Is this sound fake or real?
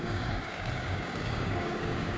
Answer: fake